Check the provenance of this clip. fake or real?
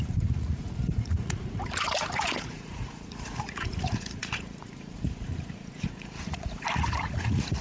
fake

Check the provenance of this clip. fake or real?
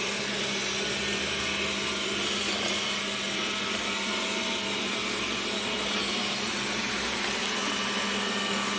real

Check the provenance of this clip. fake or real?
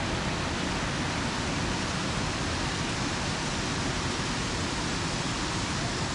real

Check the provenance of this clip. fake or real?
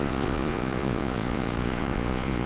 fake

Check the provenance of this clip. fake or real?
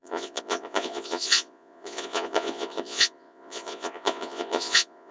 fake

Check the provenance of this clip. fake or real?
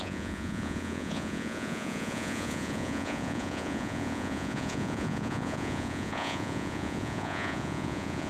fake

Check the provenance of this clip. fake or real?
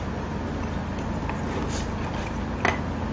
real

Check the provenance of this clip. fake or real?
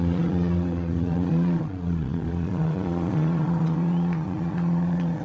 fake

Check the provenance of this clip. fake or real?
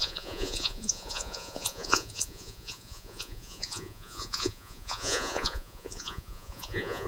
fake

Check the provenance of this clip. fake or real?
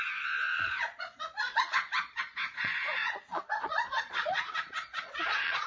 fake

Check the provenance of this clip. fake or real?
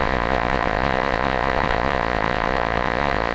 fake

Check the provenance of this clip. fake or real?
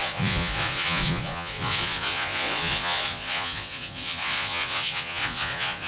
fake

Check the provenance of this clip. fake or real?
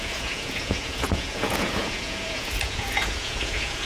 fake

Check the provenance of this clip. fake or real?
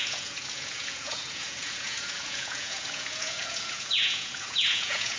fake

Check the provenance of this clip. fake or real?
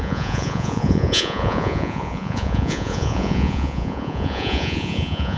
fake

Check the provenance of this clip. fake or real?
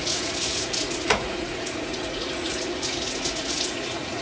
fake